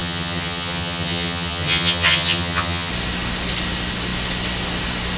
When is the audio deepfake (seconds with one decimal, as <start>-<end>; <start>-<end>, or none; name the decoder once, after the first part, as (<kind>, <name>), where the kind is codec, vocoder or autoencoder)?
0.0-2.9 (vocoder, HiFi-GAN)